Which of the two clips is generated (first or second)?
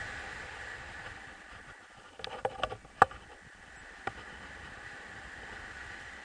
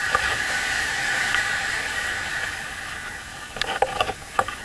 second